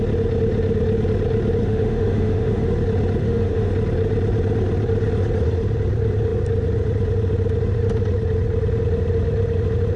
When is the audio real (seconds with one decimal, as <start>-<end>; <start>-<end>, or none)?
0.0-1.6; 2.7-3.2; 3.7-10.0